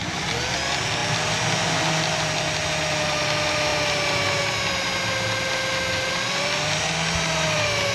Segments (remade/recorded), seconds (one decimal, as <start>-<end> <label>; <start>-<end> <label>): 0.0-7.9 recorded